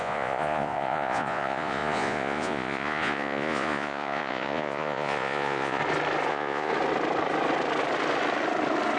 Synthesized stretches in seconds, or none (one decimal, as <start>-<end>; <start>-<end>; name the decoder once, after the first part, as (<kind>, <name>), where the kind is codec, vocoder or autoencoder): 0.0-5.8 (vocoder, Vocos); 6.3-6.7